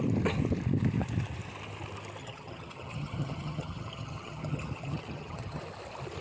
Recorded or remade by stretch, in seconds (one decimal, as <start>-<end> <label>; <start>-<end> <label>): 0.0-2.2 recorded; 2.2-5.6 remade; 5.6-6.2 recorded